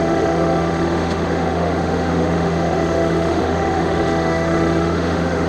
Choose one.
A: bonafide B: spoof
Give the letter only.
B